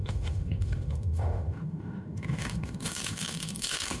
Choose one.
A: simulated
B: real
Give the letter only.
A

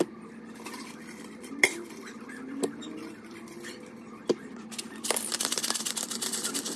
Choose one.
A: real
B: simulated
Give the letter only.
B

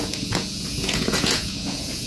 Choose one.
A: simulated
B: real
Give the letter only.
A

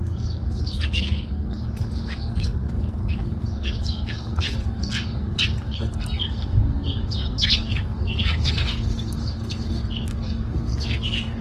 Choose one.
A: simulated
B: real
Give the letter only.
A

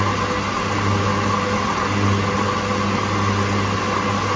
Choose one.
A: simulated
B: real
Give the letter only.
B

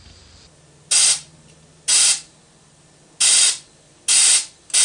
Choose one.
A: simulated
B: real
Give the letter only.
B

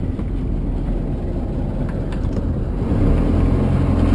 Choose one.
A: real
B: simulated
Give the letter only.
A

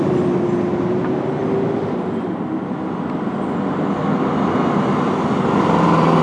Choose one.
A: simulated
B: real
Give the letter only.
B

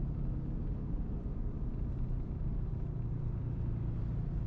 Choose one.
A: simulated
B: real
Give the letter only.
B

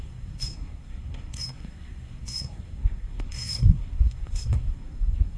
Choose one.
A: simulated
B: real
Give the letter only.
A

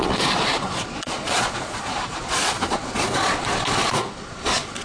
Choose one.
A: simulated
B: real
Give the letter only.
A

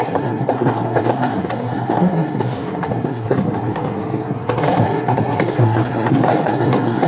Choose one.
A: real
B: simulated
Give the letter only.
B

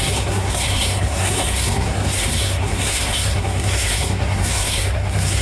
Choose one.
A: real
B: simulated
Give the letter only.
B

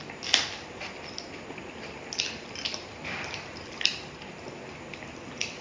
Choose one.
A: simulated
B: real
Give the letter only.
B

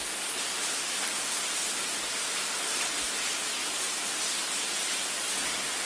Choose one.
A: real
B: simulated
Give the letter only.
A